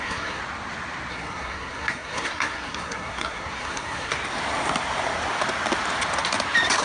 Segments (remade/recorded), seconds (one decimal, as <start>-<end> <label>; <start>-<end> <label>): 0.0-0.4 remade; 0.4-1.1 recorded; 1.1-4.1 remade; 4.1-6.8 recorded